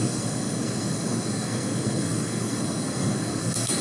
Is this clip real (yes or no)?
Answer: no